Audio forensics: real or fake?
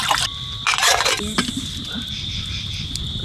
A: real